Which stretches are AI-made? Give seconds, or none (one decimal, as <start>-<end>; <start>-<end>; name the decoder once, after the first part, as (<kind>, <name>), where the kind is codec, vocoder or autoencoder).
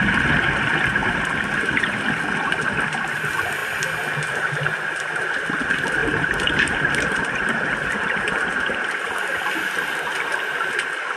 1.0-2.0 (vocoder, BigVGAN v2); 6.0-8.7